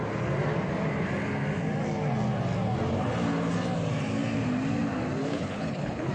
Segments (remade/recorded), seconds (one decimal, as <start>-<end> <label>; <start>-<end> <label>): 0.0-5.2 recorded; 5.2-6.1 remade